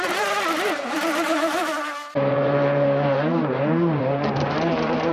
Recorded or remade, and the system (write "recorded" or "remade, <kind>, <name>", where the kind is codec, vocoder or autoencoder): remade, vocoder, BigVGAN v2